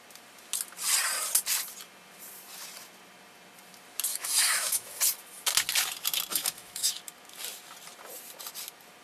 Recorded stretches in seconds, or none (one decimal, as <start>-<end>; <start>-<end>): 0.0-4.1; 5.0-6.3; 7.0-9.0

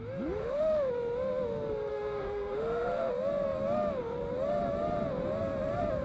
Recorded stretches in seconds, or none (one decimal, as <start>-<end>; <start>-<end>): 0.0-0.4; 0.9-1.9; 3.1-6.0

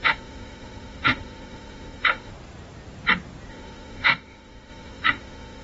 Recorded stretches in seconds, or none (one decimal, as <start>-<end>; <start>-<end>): 2.3-3.5

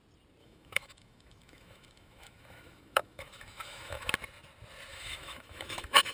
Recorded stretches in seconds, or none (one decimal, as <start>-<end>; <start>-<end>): 0.0-0.4; 4.1-4.9

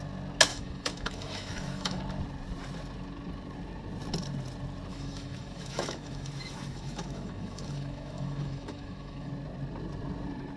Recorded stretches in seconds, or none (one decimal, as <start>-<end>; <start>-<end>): 0.0-0.5; 2.0-4.9; 9.3-10.6